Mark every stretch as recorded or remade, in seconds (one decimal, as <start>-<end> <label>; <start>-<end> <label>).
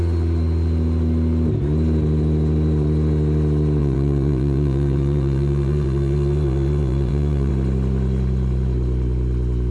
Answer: 0.0-3.8 recorded; 3.8-7.5 remade; 7.5-9.7 recorded